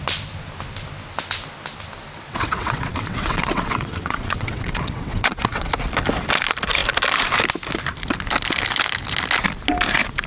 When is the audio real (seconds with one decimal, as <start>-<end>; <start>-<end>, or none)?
0.0-2.3; 5.7-10.3